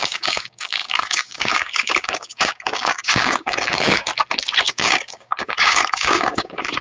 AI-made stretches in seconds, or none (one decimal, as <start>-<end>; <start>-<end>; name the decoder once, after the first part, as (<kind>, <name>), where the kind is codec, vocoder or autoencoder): 0.0-4.1 (codec, DAC); 4.6-6.8